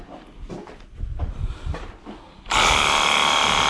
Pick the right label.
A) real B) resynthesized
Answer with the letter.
A